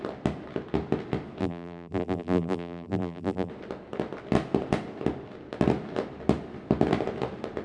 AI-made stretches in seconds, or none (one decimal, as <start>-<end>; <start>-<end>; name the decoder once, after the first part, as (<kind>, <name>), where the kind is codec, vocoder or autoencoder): 1.4-3.5 (vocoder, BigVGAN v2)

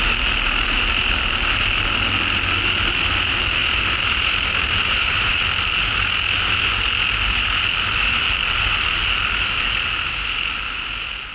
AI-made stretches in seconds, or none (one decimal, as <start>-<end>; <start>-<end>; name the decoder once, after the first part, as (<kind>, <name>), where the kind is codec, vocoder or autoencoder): 3.6-5.3 (vocoder, BigVGAN v2)

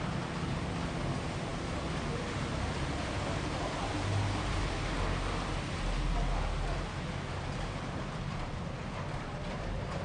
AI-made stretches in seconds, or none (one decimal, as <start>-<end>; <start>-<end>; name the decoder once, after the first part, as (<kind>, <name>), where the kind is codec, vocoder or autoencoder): 0.0-4.6 (vocoder, BigVGAN v2); 7.3-10.0